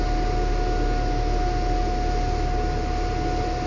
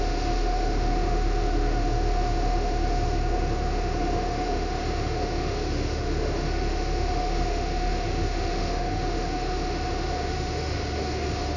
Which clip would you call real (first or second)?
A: first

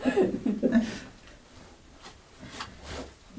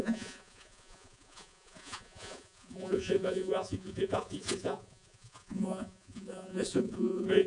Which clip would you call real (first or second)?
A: first